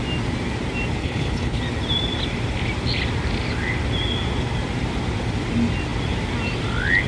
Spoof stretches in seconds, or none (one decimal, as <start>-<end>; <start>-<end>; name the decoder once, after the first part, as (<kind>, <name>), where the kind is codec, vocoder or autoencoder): 1.0-1.6 (codec, HILCodec)